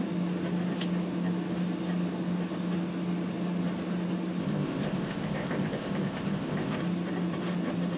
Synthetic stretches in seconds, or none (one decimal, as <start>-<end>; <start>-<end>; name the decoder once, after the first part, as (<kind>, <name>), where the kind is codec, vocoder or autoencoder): 4.4-6.8 (codec, ZipCodec)